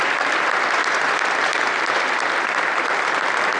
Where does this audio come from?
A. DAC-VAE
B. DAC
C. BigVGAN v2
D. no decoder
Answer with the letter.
D